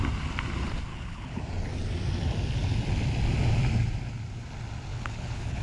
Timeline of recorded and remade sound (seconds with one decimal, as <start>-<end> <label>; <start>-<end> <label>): 0.0-0.9 recorded; 0.9-1.4 remade; 1.4-4.9 recorded; 4.9-5.6 remade